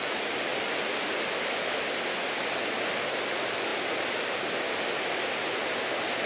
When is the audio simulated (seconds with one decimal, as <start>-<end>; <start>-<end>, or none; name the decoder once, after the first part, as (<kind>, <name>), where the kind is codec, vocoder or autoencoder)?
none